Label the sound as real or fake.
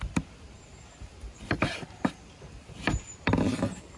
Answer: fake